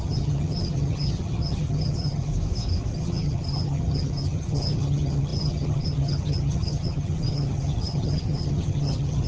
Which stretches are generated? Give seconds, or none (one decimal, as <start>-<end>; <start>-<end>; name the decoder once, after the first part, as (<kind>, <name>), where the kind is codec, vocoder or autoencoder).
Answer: 0.0-2.3 (vocoder, HiFi-GAN); 2.9-9.3